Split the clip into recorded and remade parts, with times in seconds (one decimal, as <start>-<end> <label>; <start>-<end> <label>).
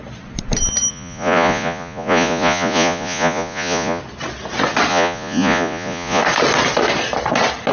0.0-0.9 recorded; 0.9-4.0 remade; 4.0-4.9 recorded; 4.9-6.2 remade; 6.2-7.7 recorded